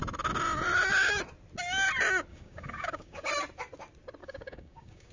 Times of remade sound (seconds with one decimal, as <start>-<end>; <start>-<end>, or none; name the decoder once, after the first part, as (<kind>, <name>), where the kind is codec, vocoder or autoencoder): 2.3-3.3 (codec, DAC); 4.2-5.1